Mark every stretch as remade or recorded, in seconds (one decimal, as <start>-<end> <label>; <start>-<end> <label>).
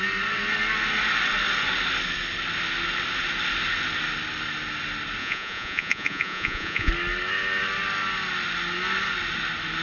0.0-5.2 recorded; 5.2-6.9 remade; 6.9-9.8 recorded